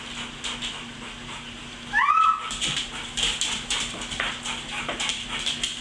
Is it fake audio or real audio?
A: real